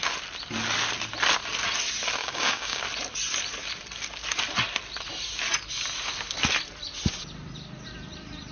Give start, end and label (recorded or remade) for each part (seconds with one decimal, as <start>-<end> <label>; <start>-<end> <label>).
0.0-2.2 recorded; 2.2-2.8 remade; 2.8-8.5 recorded